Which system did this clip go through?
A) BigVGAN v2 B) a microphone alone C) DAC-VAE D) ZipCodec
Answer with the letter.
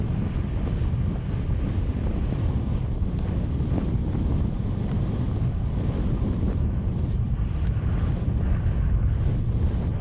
B